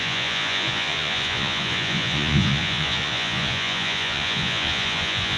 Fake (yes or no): yes